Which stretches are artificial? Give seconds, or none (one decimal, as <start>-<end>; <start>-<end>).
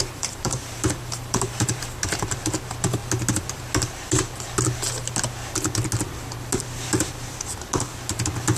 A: 0.0-1.8